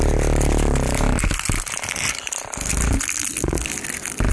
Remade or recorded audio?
recorded